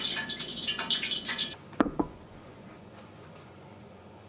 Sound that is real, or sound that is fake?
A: fake